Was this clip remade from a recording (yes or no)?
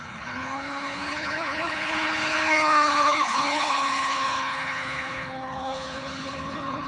yes